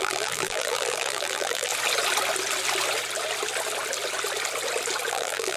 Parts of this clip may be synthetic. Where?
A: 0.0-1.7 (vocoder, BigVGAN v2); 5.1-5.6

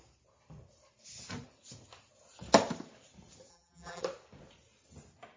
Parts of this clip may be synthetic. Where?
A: 3.5-4.0 (vocoder, BigVGAN v2)

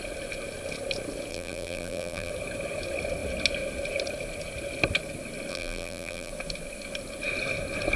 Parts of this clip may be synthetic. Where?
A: 1.3-2.3 (vocoder, BigVGAN v2); 5.5-6.3

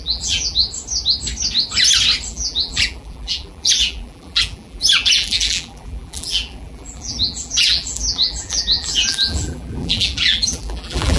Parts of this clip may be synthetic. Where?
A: 0.0-0.6 (vocoder, BigVGAN v2); 2.3-11.2

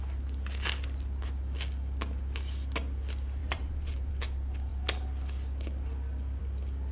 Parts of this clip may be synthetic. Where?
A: 3.4-4.1 (vocoder, BigVGAN v2)

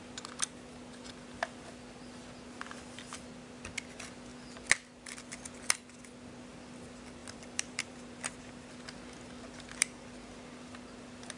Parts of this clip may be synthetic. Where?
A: 7.2-8.4 (vocoder, BigVGAN v2)

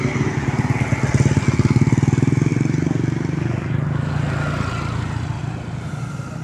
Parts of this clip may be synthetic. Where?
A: none